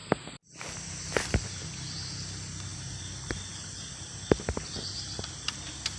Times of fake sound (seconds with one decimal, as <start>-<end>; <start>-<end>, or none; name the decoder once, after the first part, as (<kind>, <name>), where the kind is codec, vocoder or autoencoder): none